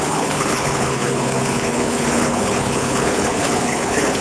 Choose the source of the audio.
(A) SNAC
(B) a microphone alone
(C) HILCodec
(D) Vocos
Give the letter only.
C